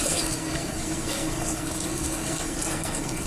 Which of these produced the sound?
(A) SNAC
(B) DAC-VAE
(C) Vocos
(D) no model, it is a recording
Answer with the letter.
A